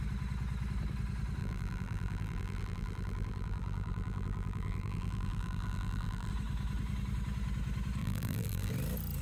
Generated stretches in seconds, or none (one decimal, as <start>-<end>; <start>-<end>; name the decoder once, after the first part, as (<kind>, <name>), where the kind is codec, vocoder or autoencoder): 1.4-6.3 (vocoder, BigVGAN v2); 8.0-8.7